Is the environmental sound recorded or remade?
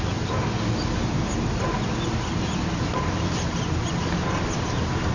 recorded